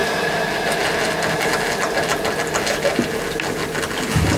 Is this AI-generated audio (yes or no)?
no